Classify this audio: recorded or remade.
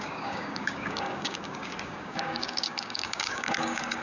remade